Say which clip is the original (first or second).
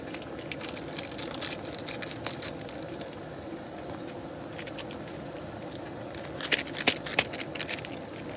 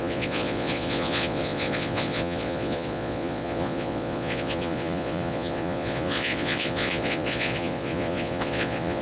first